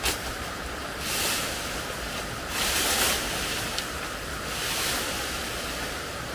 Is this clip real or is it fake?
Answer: real